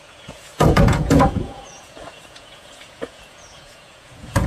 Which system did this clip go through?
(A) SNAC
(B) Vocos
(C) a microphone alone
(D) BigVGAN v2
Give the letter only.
B